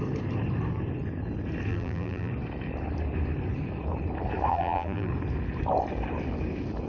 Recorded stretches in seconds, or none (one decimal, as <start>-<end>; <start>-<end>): 0.0-1.7; 2.3-4.5; 5.1-6.9